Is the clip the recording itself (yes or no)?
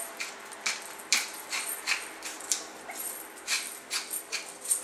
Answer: yes